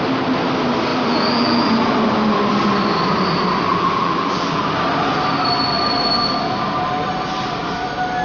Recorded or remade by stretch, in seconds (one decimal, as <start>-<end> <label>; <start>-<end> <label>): 0.0-0.9 recorded; 0.9-1.9 remade; 1.9-3.7 recorded; 3.7-4.6 remade; 4.6-8.2 recorded